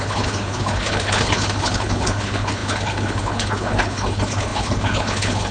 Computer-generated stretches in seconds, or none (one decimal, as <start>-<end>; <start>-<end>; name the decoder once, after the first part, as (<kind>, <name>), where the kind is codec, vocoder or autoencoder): 0.0-5.5 (codec, HILCodec)